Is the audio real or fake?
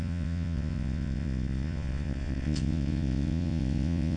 fake